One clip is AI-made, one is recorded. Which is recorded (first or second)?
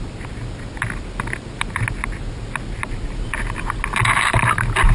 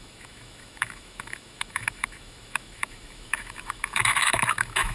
first